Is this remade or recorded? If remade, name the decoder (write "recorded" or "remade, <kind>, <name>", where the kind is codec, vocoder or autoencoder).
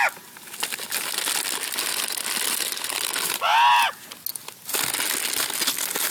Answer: recorded